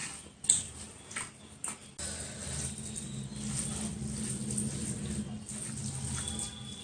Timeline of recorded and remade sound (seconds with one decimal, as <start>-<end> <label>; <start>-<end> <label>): 0.0-1.4 remade; 1.4-6.8 recorded

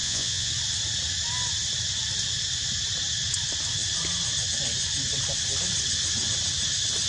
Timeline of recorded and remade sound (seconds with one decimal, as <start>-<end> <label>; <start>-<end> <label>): 0.0-0.5 remade; 0.5-7.1 recorded